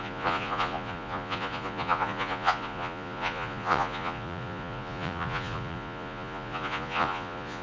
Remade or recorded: remade